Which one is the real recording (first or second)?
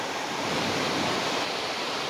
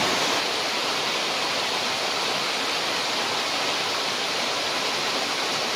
second